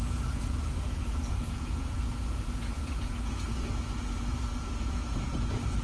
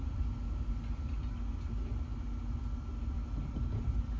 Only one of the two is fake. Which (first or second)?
first